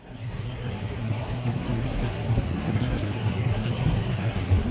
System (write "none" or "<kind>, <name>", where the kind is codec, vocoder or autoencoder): codec, SNAC